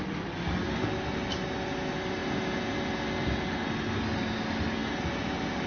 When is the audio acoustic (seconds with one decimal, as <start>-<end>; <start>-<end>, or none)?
0.0-5.7